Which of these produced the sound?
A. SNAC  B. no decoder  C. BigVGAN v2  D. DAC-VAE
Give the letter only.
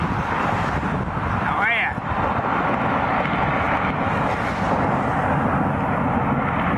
B